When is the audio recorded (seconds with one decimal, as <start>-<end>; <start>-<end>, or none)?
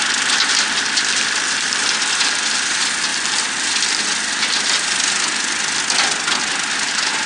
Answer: 0.0-7.3